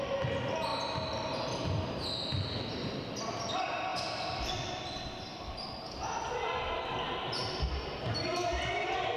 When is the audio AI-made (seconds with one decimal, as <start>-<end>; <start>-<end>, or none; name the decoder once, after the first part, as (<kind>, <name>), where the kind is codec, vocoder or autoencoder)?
3.9-4.7 (vocoder, BigVGAN v2); 5.3-6.2